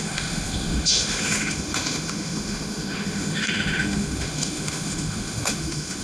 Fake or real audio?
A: fake